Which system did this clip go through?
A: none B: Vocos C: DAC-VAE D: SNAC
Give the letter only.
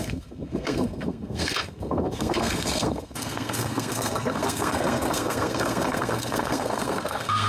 D